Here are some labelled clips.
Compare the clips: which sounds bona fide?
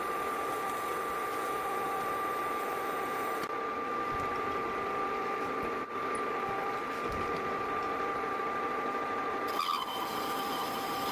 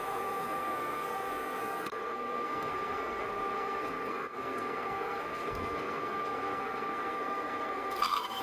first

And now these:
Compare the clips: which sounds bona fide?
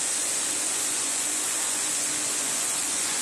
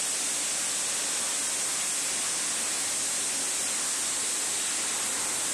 second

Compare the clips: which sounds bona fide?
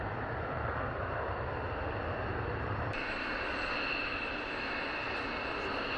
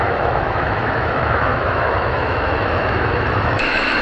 first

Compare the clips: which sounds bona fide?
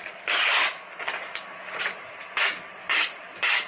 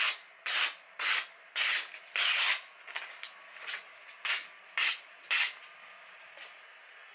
second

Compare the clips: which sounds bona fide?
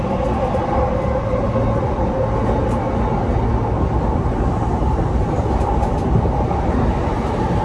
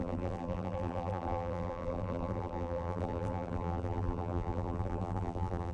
first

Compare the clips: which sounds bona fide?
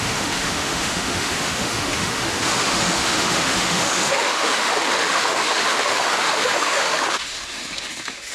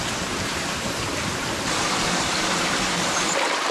second